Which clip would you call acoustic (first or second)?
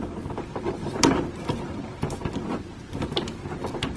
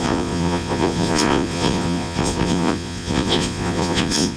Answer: first